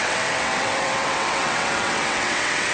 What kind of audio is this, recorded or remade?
remade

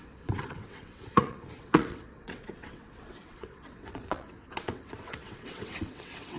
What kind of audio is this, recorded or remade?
remade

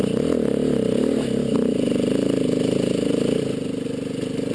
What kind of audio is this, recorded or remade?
recorded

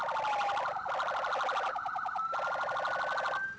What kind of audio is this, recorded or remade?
recorded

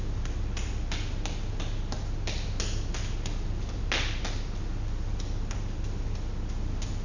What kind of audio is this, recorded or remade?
recorded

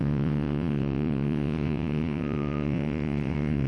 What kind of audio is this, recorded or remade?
remade